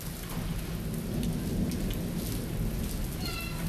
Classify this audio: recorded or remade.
recorded